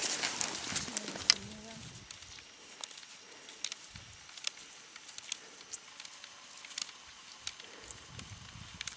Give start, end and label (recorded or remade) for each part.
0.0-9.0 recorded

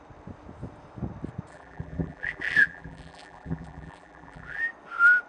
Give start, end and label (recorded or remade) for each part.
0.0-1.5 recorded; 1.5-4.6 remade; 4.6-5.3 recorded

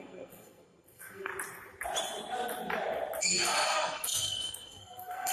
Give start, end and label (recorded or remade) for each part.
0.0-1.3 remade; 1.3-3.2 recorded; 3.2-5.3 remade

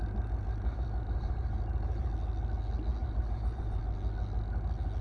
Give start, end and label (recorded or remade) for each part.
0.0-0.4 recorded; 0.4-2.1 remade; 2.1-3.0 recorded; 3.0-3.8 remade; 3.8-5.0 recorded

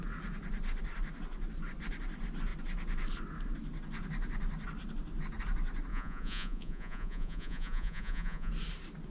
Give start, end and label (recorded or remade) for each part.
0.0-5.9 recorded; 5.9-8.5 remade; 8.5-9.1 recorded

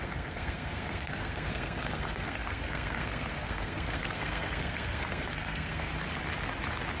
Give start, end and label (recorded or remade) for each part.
0.0-5.9 remade; 5.9-7.0 recorded

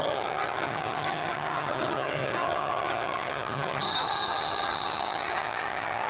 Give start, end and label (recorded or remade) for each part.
0.0-6.1 remade

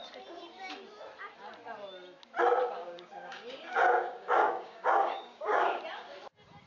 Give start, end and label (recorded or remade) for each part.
0.0-2.8 recorded; 2.8-5.8 remade; 5.8-6.7 recorded